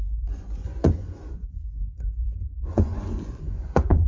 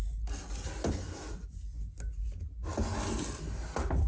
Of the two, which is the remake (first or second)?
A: first